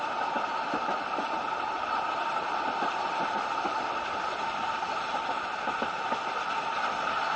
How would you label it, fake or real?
real